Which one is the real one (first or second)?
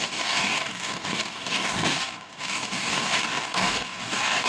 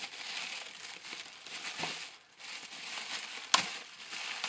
second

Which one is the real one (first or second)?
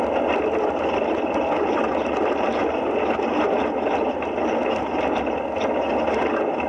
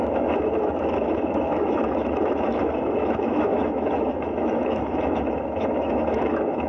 first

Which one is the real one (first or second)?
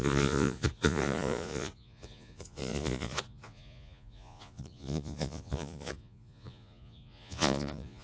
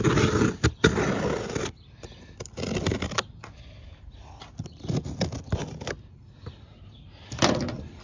second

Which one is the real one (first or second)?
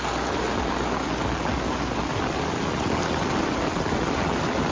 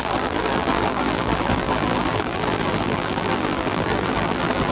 first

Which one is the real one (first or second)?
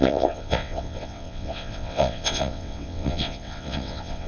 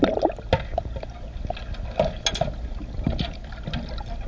second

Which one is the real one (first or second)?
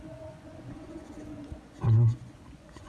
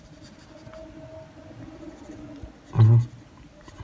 second